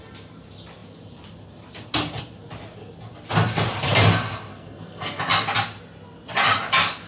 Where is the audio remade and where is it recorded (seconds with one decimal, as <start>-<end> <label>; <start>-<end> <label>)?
0.0-4.5 recorded; 4.5-5.2 remade; 5.2-7.1 recorded